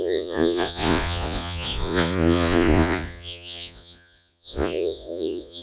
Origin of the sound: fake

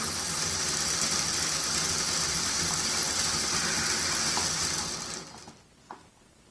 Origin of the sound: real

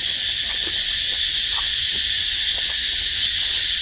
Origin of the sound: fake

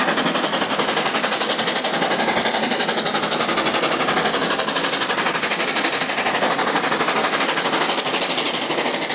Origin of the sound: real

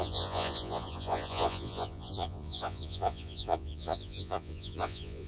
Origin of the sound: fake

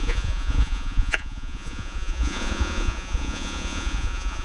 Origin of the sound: fake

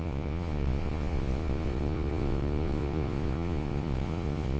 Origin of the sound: fake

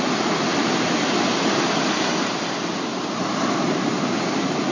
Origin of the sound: real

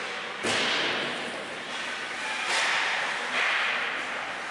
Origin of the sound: real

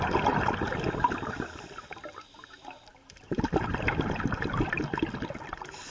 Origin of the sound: real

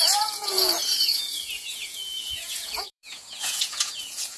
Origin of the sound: fake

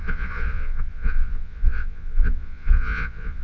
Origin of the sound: fake